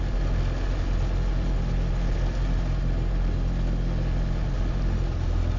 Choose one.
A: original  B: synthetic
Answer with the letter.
A